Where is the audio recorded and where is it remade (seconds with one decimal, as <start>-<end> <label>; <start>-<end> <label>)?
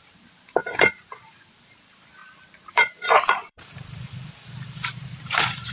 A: 0.0-0.6 recorded; 0.6-1.1 remade; 1.1-2.2 recorded; 2.2-5.7 remade